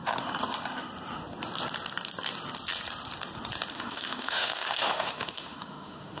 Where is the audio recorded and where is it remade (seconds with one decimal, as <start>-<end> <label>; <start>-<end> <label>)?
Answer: 0.0-3.7 recorded; 3.7-6.2 remade